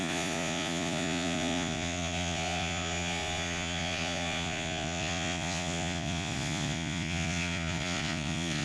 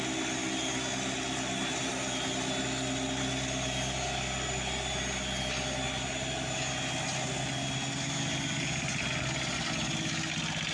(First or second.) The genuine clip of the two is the second